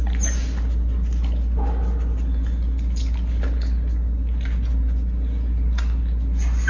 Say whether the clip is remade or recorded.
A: recorded